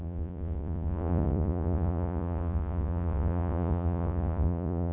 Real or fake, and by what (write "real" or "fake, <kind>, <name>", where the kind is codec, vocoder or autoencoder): fake, vocoder, Vocos